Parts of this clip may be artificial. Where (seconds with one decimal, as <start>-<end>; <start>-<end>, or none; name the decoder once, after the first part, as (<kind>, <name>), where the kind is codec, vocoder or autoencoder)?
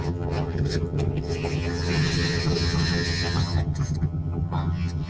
0.0-5.1 (vocoder, HiFi-GAN)